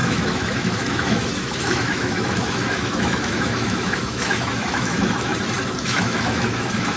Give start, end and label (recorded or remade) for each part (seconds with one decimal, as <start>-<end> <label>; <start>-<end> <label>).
0.0-5.3 remade; 5.3-5.8 recorded; 5.8-7.0 remade